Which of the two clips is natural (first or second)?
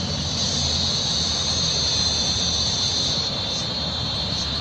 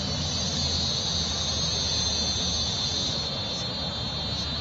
second